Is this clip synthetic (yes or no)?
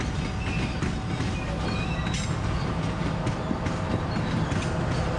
no